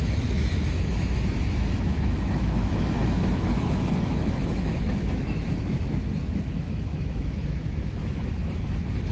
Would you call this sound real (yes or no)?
no